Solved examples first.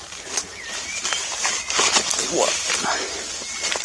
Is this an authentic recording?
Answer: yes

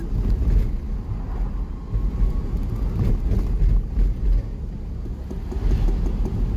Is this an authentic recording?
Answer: yes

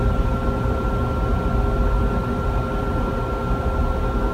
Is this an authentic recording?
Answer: yes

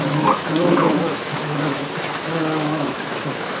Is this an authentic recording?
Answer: no